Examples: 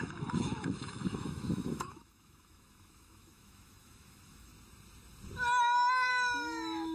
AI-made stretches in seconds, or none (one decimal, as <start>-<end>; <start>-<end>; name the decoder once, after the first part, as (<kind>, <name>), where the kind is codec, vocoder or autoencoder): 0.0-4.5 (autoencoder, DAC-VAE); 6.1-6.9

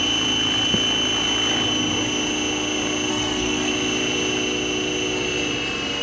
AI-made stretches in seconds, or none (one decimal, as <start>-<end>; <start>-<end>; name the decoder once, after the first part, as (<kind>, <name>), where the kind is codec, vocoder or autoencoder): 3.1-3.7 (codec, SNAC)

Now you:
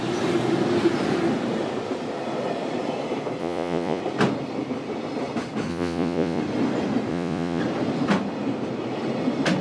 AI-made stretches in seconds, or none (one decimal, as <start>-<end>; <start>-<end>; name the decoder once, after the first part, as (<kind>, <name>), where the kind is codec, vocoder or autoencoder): 3.4-4.0 (vocoder, Vocos); 5.7-6.4; 7.1-7.6

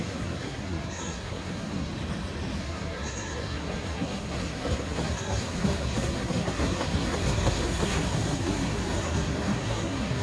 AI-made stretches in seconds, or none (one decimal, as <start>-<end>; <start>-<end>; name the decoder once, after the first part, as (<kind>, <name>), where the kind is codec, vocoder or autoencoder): 0.0-1.9 (codec, SNAC); 2.6-10.2

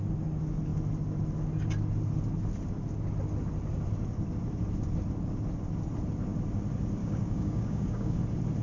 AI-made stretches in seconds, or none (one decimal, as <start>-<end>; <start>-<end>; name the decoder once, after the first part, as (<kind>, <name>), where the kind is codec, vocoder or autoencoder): 7.0-8.2 (codec, DAC)

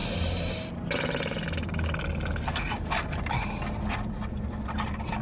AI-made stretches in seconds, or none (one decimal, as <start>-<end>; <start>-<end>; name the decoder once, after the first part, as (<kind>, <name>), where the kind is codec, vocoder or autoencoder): none